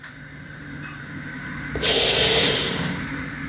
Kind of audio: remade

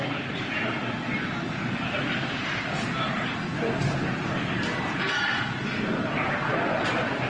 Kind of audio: recorded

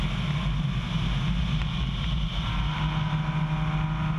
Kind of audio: recorded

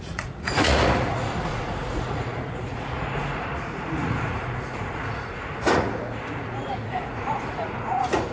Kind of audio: remade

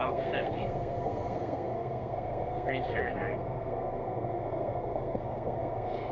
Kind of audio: remade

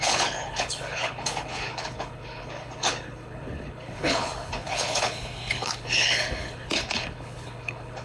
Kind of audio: remade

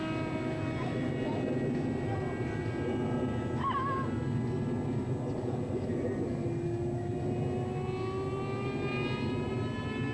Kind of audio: recorded